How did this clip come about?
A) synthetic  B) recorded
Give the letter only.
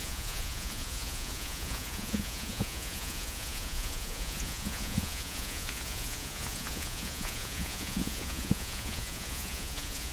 A